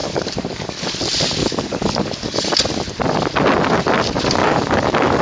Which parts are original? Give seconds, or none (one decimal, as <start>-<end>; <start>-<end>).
0.9-1.4; 2.6-4.4